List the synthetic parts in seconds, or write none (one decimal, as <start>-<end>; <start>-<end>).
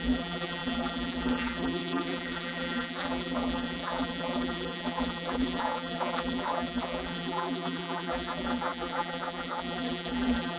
0.0-10.6